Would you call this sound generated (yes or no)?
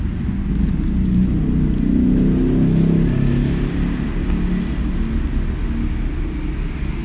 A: no